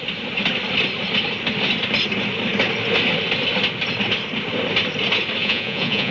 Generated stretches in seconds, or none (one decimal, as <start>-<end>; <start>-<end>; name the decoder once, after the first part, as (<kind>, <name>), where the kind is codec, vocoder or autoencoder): 5.4-6.1 (vocoder, Vocos)

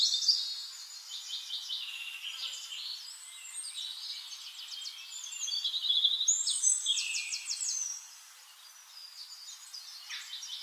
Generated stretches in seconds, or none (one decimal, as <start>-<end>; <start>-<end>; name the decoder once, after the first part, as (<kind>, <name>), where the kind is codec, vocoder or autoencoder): 9.0-9.5 (vocoder, BigVGAN v2)

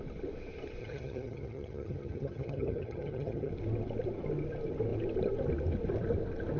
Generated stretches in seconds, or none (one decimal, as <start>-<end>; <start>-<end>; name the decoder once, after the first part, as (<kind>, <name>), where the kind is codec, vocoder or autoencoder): 0.8-3.5 (vocoder, HiFi-GAN)

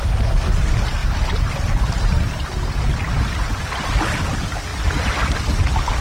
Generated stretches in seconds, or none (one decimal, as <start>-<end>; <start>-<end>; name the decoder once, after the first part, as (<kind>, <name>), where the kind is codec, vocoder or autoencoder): none

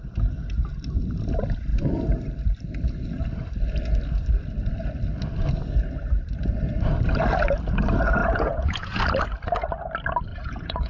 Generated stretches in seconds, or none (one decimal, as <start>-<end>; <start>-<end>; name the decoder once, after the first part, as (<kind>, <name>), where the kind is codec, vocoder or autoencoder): 8.2-9.0 (vocoder, Vocos); 10.3-10.9

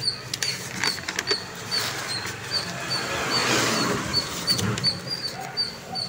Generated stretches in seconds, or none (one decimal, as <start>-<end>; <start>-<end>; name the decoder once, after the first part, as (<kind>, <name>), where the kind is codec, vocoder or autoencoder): none

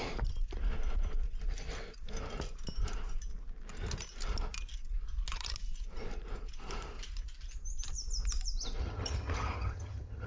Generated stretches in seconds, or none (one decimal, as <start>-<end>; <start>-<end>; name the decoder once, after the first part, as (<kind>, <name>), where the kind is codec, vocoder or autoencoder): 8.8-10.3 (vocoder, HiFi-GAN)